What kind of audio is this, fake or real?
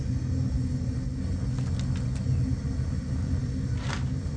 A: real